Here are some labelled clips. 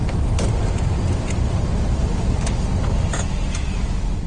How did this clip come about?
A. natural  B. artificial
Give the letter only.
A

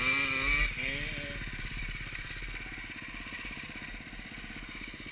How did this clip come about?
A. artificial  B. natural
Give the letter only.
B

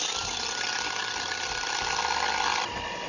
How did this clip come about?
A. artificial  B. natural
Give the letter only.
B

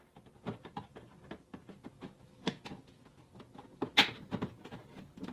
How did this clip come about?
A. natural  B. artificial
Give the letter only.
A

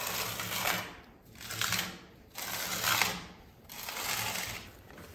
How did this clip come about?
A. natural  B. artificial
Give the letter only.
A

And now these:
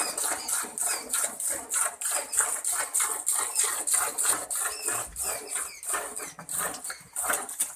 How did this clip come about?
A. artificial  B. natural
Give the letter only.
B